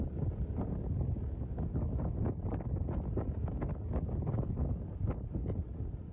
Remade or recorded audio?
recorded